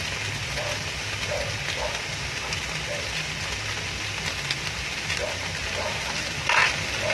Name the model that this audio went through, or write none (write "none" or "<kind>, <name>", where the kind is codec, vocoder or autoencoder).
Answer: none